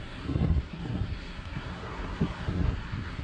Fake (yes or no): yes